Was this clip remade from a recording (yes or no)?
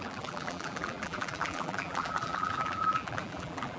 yes